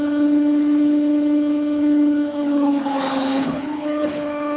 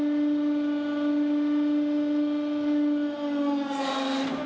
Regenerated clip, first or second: first